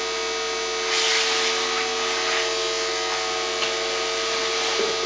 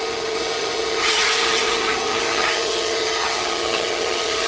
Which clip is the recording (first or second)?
first